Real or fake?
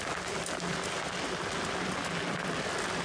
real